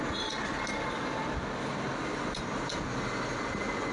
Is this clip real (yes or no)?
yes